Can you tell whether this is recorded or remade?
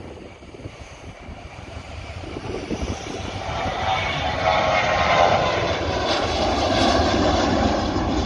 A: remade